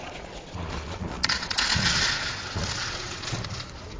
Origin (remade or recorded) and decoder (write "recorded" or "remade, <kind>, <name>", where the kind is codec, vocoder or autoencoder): remade, vocoder, Vocos